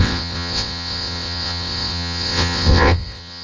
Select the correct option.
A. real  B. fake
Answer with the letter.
B